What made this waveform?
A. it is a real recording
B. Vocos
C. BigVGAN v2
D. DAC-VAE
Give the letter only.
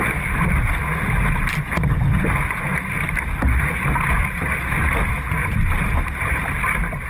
A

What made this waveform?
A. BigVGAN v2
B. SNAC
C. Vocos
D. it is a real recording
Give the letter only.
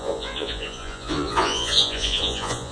C